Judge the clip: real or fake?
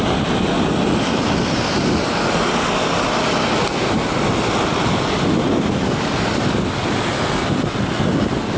real